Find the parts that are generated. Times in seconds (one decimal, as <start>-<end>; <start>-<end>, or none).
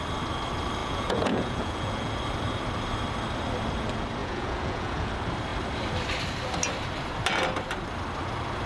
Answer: 0.8-2.1; 4.2-5.1